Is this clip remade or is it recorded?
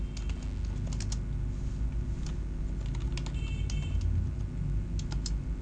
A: recorded